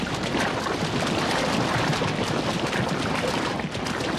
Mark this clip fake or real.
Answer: real